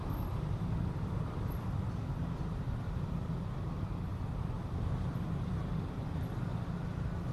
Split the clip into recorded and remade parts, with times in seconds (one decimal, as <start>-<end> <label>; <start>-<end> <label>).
0.0-6.5 remade; 6.5-7.3 recorded